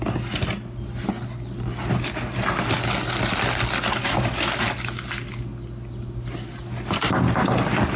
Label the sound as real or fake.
real